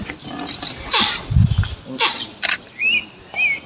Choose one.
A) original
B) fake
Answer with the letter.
A